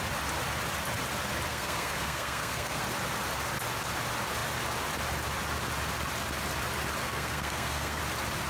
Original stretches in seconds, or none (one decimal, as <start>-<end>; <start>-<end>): 0.0-1.5; 2.8-7.0; 8.0-8.5